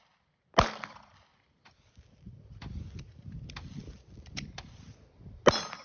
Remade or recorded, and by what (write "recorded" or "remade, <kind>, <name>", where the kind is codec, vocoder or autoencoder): recorded